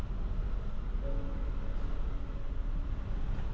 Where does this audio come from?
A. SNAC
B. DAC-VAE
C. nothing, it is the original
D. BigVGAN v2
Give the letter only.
C